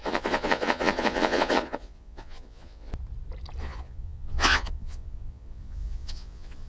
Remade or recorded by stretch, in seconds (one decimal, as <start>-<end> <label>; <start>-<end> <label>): 0.0-2.9 remade; 2.9-3.6 recorded; 3.6-6.7 remade